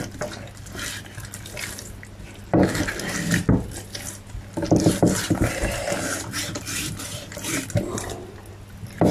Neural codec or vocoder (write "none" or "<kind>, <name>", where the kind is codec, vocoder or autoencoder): none